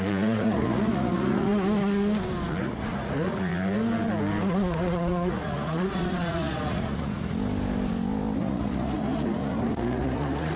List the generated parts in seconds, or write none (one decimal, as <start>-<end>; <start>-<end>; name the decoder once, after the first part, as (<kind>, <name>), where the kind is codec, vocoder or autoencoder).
0.0-1.5 (vocoder, Vocos); 2.6-3.5; 4.5-7.2; 8.4-10.6